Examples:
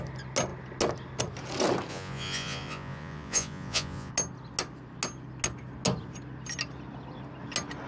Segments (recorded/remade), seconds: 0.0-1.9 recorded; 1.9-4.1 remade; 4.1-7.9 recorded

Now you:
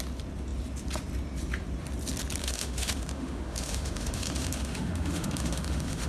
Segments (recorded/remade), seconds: 0.0-2.4 recorded; 2.4-6.1 remade

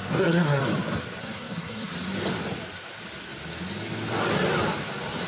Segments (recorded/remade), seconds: 0.0-0.6 remade; 0.6-1.2 recorded; 1.2-1.9 remade; 1.9-5.3 recorded